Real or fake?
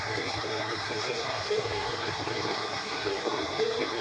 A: fake